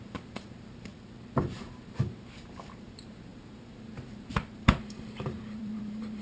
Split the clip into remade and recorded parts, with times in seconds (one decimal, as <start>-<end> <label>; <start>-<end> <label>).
0.0-0.9 remade; 0.9-1.5 recorded; 1.5-6.2 remade